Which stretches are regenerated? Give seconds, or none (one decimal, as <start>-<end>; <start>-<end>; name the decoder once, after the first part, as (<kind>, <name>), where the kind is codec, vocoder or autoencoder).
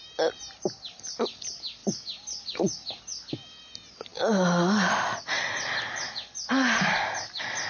none